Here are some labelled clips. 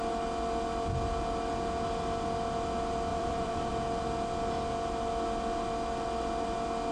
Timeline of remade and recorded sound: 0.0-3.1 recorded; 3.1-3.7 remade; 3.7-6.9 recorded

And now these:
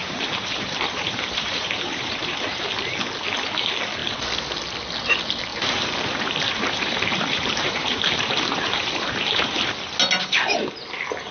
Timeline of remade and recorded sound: 0.0-2.6 remade; 2.6-5.5 recorded; 5.5-9.6 remade; 9.6-11.3 recorded

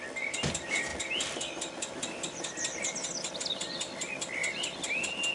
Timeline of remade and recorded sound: 0.0-5.3 recorded

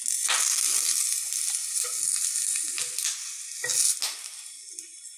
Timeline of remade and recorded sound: 0.0-3.7 remade; 3.7-4.8 recorded; 4.8-5.2 remade

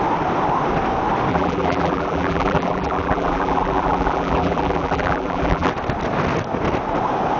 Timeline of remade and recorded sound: 0.0-1.3 recorded; 1.3-5.7 remade; 5.7-7.4 recorded